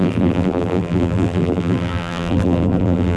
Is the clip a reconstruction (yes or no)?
yes